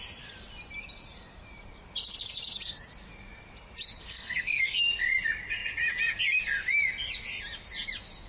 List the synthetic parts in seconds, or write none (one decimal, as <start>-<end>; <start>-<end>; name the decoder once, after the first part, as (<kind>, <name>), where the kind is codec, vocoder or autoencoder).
4.0-5.0 (codec, SNAC)